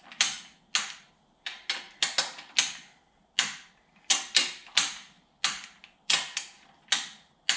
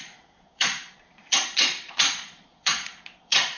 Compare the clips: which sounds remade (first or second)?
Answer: second